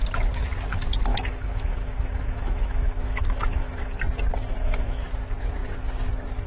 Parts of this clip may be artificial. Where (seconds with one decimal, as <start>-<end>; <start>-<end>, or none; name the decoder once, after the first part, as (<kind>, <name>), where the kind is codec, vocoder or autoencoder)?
1.1-4.0 (autoencoder, DAC-VAE); 4.5-5.0